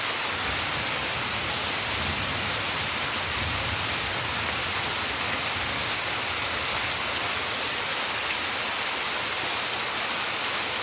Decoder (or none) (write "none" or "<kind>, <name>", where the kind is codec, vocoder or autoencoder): none